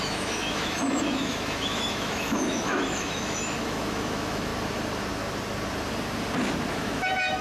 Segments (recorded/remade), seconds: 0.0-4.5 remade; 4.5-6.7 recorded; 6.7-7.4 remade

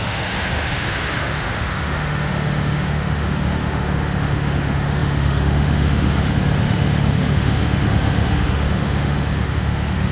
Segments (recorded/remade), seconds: 0.0-10.1 remade

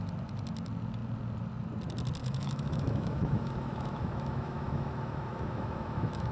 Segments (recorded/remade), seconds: 0.0-2.2 recorded; 2.2-6.3 remade